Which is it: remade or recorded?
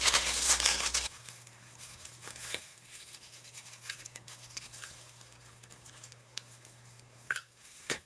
remade